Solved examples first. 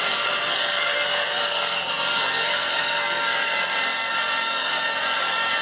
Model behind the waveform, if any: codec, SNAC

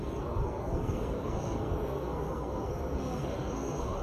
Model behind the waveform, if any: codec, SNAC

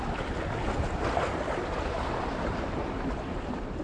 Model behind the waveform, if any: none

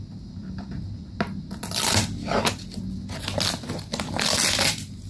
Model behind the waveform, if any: none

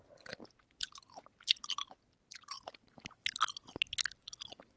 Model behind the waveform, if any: none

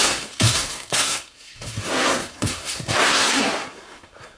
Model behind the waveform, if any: codec, SNAC